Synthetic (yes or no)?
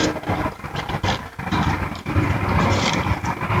no